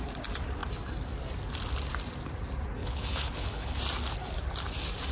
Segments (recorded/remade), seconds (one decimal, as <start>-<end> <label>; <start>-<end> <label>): 0.0-2.8 recorded; 2.8-3.8 remade; 3.8-5.1 recorded